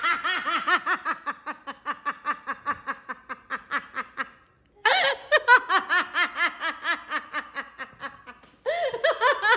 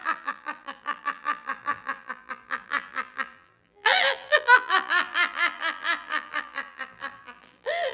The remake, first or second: second